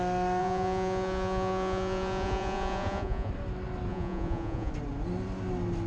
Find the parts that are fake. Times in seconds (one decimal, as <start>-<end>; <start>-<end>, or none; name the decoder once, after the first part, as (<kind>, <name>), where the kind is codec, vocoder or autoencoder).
0.4-3.3 (vocoder, Vocos); 3.9-4.7